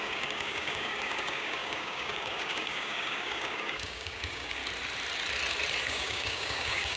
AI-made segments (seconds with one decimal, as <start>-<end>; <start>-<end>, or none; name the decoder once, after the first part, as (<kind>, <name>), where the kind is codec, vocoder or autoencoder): 0.0-4.6 (codec, DAC); 5.9-7.0